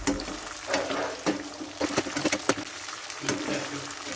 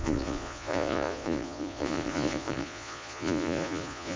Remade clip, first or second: second